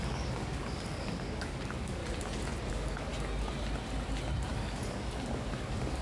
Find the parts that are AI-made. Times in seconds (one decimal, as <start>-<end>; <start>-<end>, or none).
0.0-2.0; 2.7-3.1; 4.5-6.0